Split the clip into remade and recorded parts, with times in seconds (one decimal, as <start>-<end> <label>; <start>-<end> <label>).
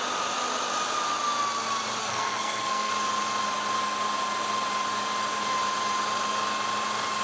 0.0-2.0 recorded; 2.0-2.9 remade; 2.9-7.2 recorded